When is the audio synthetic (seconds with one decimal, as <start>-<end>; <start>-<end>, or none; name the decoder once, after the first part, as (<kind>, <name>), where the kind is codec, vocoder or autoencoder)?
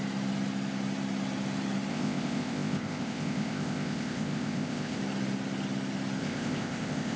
1.9-5.0 (codec, ZipCodec); 6.2-7.2